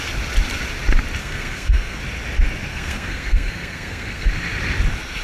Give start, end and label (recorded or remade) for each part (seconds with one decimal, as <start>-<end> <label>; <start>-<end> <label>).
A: 0.0-1.2 recorded; 1.2-2.0 remade; 2.0-2.7 recorded; 2.7-4.3 remade; 4.3-5.2 recorded